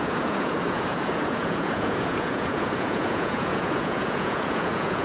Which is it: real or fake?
fake